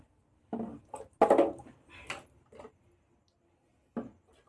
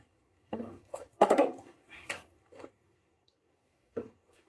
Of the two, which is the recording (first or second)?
first